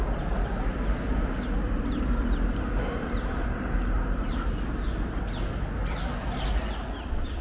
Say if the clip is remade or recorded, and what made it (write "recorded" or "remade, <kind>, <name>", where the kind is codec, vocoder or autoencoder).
recorded